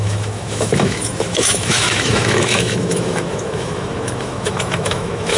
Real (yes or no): no